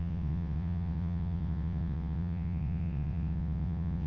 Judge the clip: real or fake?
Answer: fake